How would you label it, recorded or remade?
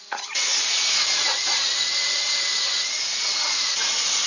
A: remade